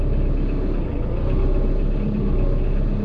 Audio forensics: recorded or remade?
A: recorded